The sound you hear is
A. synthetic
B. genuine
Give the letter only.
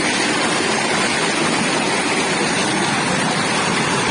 B